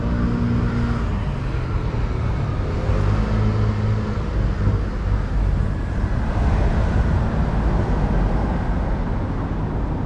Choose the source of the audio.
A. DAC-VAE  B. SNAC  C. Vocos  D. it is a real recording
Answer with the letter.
D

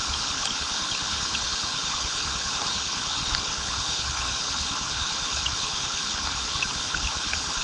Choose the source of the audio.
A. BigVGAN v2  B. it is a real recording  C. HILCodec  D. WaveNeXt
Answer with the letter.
C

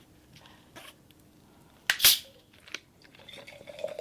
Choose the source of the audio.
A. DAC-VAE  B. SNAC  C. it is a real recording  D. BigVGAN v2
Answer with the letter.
C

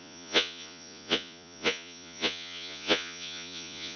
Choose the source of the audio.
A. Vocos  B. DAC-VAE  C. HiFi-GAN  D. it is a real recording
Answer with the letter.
A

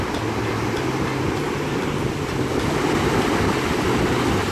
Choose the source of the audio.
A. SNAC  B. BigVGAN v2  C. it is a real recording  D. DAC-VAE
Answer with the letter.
C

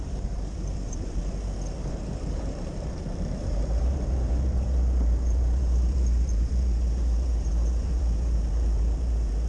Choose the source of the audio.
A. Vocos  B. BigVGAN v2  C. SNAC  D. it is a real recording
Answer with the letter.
B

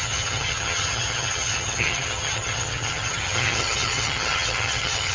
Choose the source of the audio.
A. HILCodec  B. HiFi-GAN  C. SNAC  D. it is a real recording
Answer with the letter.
B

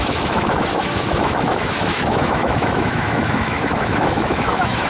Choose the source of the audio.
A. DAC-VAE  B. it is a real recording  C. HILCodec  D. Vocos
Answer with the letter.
A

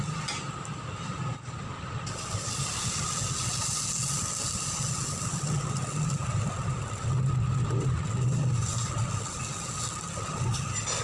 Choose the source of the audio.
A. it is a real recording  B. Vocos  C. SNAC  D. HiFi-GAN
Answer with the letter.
A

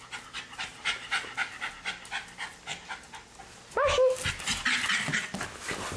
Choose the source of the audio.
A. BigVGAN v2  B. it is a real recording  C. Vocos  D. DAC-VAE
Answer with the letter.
B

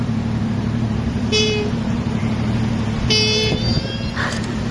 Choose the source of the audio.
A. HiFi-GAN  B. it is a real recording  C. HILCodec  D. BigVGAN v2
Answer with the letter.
D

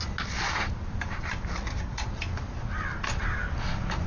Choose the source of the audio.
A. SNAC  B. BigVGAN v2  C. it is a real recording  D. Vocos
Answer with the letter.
C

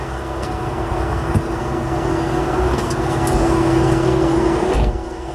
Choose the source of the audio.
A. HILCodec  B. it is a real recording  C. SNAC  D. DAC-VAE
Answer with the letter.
C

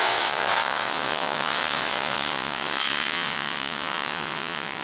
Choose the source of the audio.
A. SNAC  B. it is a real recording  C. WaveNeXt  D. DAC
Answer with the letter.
C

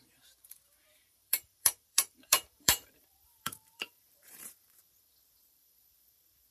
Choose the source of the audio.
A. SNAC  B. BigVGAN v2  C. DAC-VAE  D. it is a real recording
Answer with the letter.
B